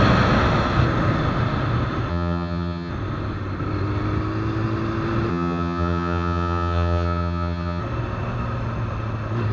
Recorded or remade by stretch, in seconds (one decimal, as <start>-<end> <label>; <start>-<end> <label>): 0.0-2.1 recorded; 2.1-2.9 remade; 2.9-5.3 recorded; 5.3-7.8 remade; 7.8-9.5 recorded